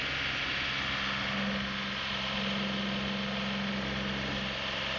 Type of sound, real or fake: real